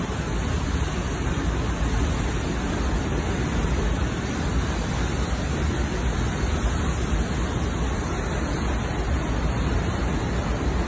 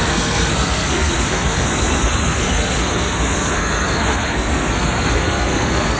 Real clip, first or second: first